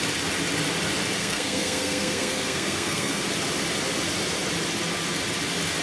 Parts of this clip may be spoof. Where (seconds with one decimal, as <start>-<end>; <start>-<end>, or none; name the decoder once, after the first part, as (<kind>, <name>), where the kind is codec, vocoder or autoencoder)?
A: 1.2-3.2 (codec, SNAC)